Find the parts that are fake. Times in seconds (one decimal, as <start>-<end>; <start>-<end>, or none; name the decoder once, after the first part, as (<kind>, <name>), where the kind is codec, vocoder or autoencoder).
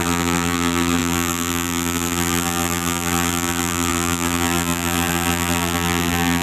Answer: 0.0-6.4 (vocoder, BigVGAN v2)